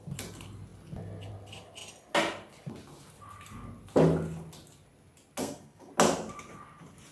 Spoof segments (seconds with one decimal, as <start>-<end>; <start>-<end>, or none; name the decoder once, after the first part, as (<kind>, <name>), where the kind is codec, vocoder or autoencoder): 5.4-5.9 (codec, SNAC)